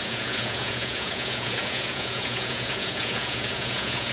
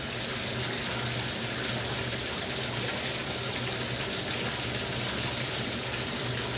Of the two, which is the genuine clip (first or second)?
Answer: second